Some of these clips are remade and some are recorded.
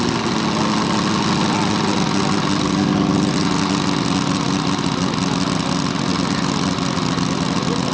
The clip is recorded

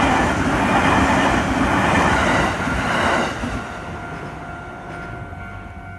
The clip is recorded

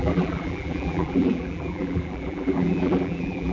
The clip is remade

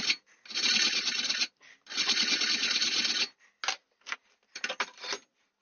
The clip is recorded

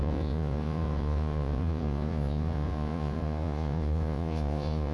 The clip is remade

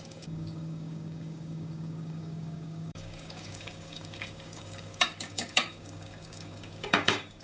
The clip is remade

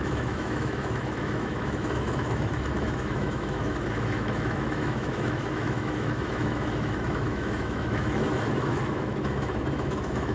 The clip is remade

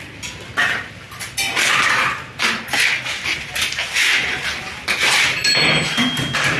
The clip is recorded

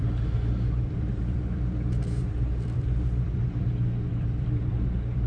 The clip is remade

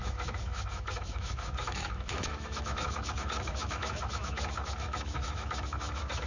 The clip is remade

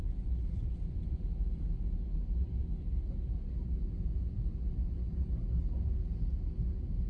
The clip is recorded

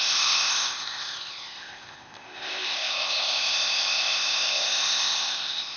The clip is remade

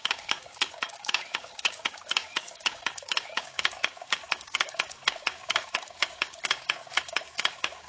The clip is remade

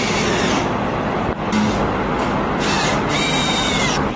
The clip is recorded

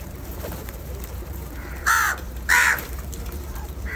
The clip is remade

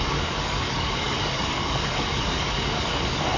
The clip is remade